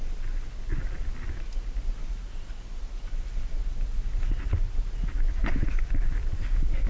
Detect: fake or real real